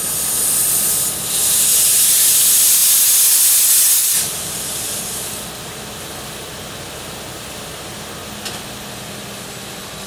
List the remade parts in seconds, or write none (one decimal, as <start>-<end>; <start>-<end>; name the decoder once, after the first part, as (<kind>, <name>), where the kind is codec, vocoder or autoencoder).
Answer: 4.0-6.2 (vocoder, BigVGAN v2)